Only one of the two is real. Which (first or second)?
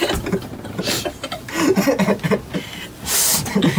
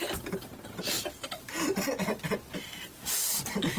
first